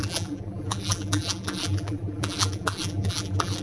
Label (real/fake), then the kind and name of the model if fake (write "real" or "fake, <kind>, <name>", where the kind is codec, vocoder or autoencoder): fake, vocoder, BigVGAN v2